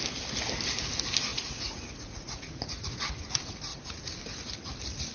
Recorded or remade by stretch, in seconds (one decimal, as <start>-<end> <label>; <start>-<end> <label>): 0.0-1.3 recorded; 1.3-3.0 remade; 3.0-3.7 recorded; 3.7-4.2 remade; 4.2-5.1 recorded